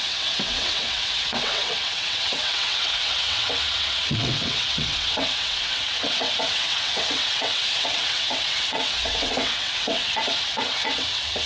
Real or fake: fake